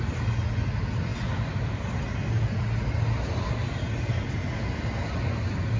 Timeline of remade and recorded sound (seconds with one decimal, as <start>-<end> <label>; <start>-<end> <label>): 0.0-5.8 recorded